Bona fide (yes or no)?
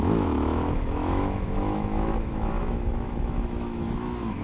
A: no